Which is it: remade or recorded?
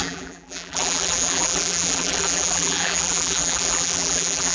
remade